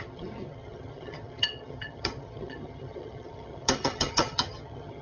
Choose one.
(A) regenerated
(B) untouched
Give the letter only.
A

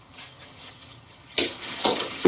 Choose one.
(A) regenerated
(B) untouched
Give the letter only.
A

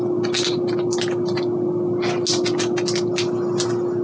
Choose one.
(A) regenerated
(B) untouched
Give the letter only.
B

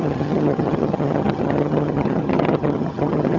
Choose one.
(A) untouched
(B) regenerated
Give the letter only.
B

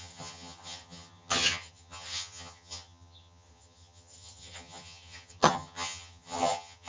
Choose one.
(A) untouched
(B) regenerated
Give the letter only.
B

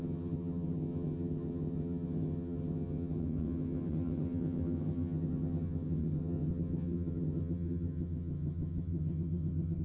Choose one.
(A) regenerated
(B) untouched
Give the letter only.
A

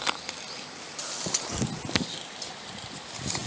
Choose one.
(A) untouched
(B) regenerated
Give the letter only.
A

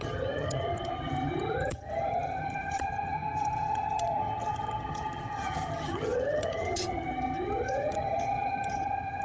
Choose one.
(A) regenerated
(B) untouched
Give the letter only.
A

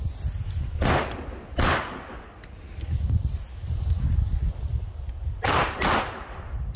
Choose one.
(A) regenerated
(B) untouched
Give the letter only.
B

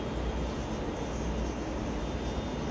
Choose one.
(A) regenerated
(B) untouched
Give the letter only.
B